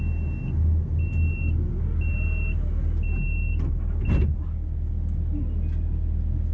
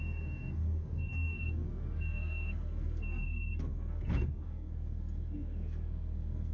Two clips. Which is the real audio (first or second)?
first